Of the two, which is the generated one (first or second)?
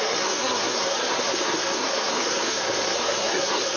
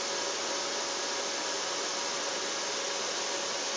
first